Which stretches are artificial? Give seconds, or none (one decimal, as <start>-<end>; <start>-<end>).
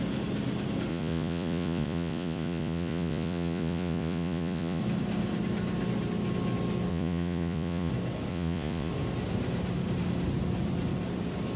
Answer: 0.9-4.8; 6.9-7.9; 8.3-8.9